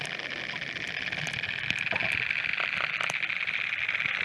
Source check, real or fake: real